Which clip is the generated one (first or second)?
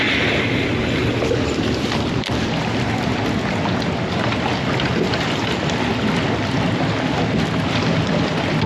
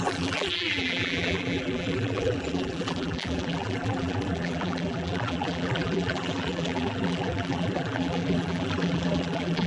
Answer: second